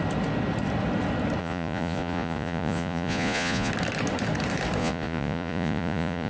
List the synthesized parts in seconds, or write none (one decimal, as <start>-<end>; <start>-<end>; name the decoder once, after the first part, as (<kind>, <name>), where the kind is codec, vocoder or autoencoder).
1.4-3.7 (vocoder, Vocos); 4.8-6.3